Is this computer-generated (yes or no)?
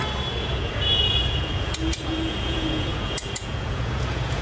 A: yes